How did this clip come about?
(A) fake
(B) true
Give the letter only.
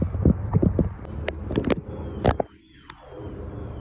B